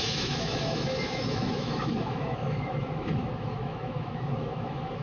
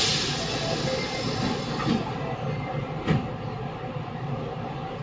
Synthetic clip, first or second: first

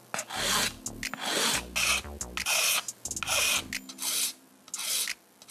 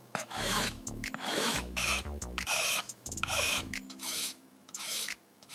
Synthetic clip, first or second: second